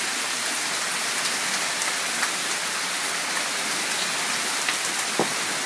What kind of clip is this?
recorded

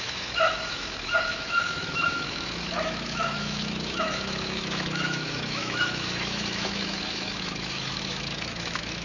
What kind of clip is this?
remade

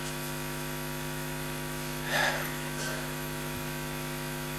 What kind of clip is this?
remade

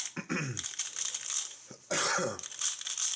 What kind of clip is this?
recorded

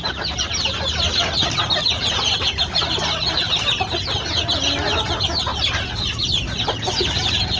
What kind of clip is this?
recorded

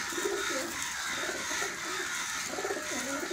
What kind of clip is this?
recorded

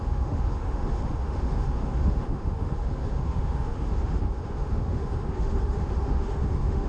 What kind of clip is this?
remade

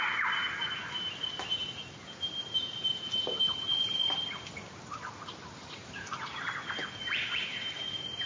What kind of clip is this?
recorded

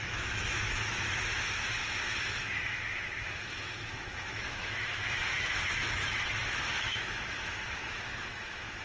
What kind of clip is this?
remade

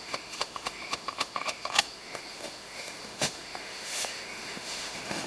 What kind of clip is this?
remade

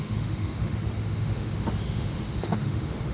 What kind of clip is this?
remade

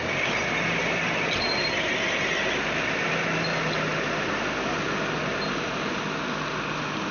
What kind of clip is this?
recorded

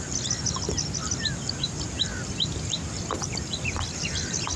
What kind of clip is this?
recorded